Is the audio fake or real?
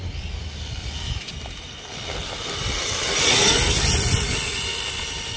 real